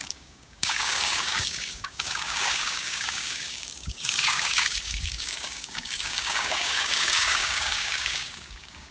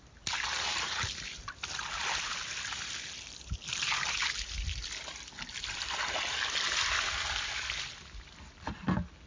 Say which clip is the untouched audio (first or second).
second